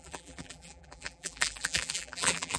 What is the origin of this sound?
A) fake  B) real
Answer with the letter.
A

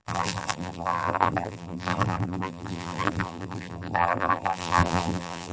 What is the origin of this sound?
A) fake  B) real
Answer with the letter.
A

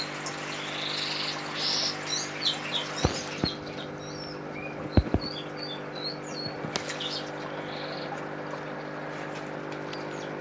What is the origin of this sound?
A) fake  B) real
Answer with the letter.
B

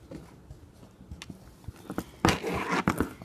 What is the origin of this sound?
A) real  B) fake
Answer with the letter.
A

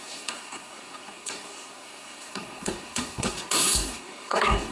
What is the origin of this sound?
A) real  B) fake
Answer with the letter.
B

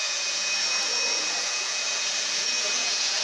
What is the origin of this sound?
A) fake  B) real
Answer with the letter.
A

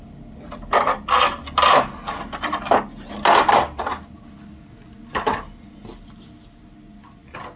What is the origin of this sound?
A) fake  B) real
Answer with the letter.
B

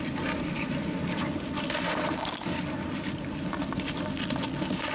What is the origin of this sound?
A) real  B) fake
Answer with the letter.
A